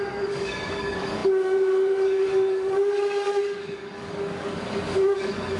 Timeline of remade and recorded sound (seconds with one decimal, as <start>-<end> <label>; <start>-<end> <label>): 0.0-5.6 remade